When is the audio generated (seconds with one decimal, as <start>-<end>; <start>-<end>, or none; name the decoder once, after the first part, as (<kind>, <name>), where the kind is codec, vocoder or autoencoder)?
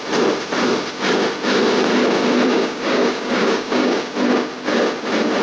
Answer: 2.5-4.0 (codec, DAC)